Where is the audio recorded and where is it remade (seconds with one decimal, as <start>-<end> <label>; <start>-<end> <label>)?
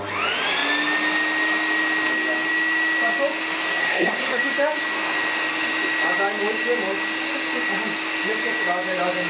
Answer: 0.0-3.8 recorded; 3.8-4.4 remade; 4.4-9.3 recorded